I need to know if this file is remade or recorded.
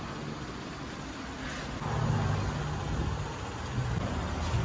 recorded